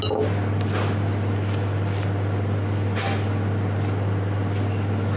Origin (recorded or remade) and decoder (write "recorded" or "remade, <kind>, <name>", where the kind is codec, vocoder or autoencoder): recorded